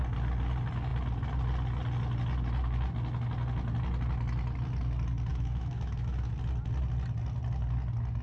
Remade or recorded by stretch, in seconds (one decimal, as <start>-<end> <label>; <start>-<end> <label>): 0.0-5.3 recorded; 5.3-6.3 remade; 6.3-8.2 recorded